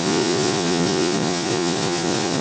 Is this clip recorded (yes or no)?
no